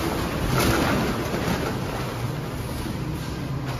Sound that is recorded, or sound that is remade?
recorded